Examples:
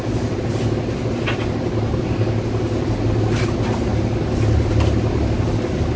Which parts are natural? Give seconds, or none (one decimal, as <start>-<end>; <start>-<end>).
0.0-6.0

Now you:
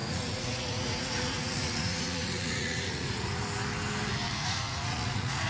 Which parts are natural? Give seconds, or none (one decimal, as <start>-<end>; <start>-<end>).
3.3-4.2

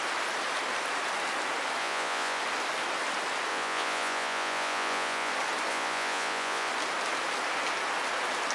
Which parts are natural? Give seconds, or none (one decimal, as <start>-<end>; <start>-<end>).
0.0-1.8; 2.4-3.5; 5.3-5.7; 6.7-8.5